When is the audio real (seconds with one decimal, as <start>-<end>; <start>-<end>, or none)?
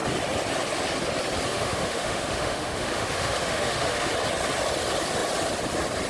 0.0-1.5; 4.1-6.1